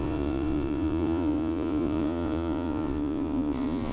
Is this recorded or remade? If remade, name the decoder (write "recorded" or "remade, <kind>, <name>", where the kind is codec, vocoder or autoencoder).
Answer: remade, vocoder, Vocos